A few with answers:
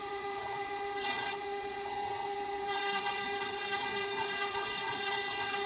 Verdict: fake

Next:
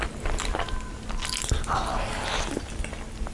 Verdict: real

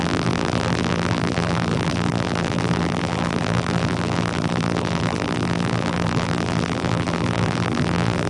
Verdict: fake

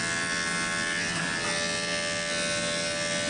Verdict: real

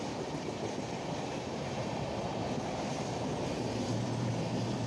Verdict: real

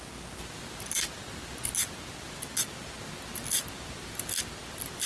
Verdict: real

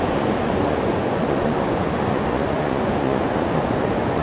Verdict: fake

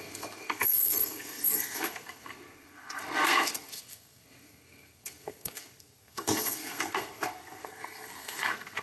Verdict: fake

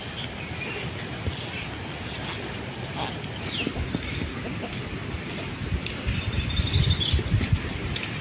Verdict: real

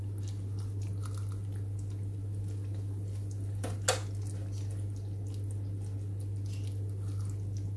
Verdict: real